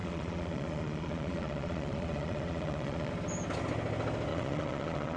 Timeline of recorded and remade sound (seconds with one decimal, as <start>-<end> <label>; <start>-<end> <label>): 0.0-3.1 remade; 3.1-4.3 recorded; 4.3-5.2 remade

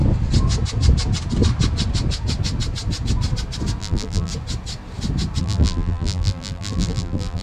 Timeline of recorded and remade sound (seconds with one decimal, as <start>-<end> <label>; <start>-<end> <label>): 0.0-3.8 recorded; 3.8-4.3 remade; 4.3-5.4 recorded; 5.4-7.4 remade

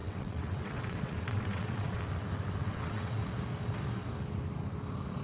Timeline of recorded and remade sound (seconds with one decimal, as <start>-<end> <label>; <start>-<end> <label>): 0.0-2.0 remade; 2.0-2.6 recorded; 2.6-3.2 remade; 3.2-5.2 recorded

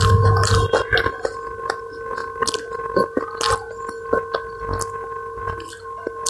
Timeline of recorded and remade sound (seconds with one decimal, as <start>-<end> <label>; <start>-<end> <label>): 0.0-6.3 recorded

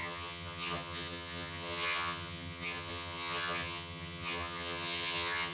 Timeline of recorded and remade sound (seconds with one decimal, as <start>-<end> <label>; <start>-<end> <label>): 0.0-5.5 remade

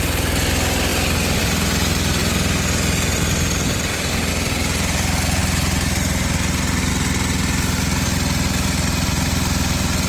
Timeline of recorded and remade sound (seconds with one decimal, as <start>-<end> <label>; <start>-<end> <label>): 0.0-10.1 recorded